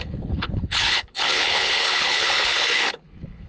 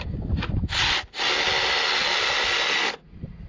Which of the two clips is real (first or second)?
second